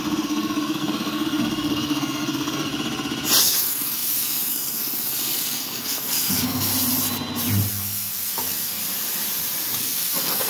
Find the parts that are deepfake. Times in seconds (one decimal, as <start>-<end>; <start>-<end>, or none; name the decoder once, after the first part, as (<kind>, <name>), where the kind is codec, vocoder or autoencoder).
0.0-2.7 (codec, SNAC); 3.4-6.7; 7.7-8.8; 9.8-10.5